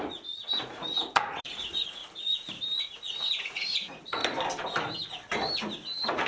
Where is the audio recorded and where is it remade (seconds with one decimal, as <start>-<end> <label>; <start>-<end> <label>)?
0.0-2.0 remade; 2.0-2.8 recorded; 2.8-4.2 remade; 4.2-6.3 recorded